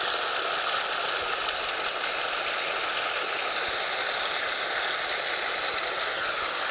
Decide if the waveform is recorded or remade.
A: recorded